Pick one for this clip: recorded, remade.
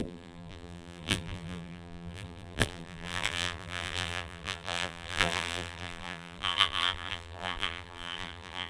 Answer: remade